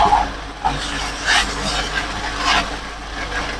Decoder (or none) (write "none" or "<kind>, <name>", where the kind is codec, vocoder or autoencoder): none